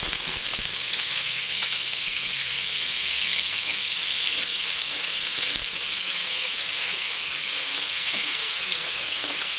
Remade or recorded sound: remade